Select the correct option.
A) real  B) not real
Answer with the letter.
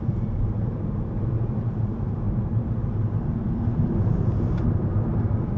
B